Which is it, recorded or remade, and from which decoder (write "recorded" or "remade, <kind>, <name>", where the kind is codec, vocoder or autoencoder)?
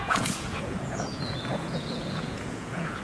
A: remade, vocoder, Vocos